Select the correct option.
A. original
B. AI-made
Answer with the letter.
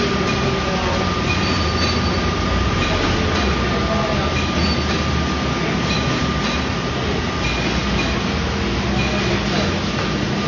A